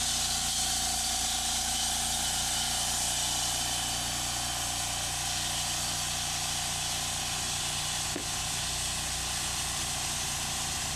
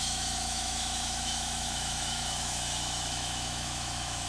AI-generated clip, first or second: second